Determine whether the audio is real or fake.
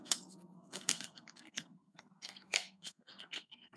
fake